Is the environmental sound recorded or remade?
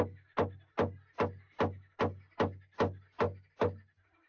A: recorded